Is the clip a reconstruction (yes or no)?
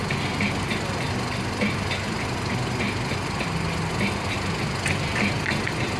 no